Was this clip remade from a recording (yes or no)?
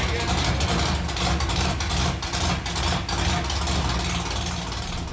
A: no